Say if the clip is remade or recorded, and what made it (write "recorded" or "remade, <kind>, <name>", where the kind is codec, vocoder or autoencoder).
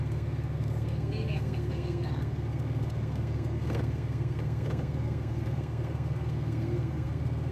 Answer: remade, codec, SNAC